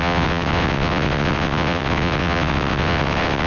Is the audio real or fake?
fake